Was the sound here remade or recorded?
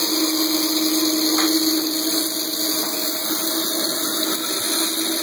recorded